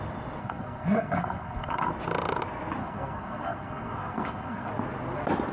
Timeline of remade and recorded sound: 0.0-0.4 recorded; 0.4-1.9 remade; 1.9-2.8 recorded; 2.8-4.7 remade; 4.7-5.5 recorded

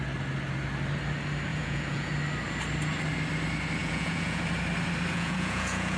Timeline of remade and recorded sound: 0.0-1.5 recorded; 1.5-2.1 remade; 2.1-3.8 recorded; 3.8-4.4 remade; 4.4-5.1 recorded; 5.1-6.0 remade